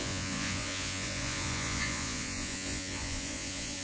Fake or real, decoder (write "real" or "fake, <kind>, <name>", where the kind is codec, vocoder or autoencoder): fake, vocoder, Vocos